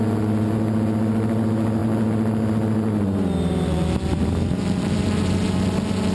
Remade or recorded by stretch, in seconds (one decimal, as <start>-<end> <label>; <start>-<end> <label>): 0.0-6.1 recorded